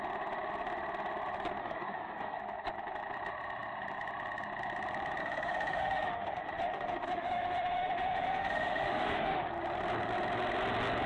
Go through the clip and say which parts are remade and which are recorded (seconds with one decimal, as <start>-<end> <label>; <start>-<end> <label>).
0.0-1.6 recorded; 1.6-2.4 remade; 2.4-5.2 recorded; 5.2-9.5 remade; 9.5-11.1 recorded